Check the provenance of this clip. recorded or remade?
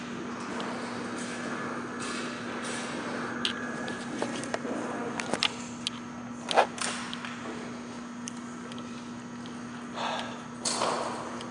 recorded